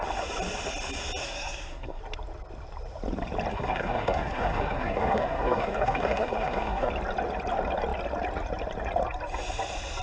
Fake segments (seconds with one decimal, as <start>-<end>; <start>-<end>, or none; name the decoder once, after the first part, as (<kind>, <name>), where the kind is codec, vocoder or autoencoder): 1.2-2.0 (codec, SNAC); 3.5-6.9